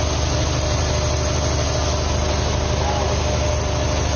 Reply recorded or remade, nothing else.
recorded